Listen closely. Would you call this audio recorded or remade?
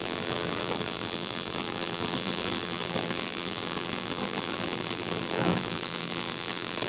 remade